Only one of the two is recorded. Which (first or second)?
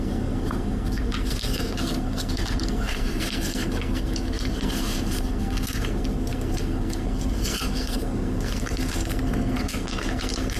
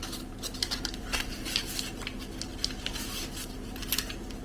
second